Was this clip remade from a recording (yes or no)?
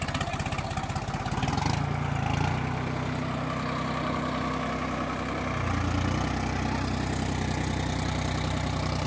no